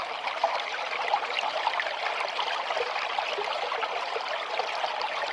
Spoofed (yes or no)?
no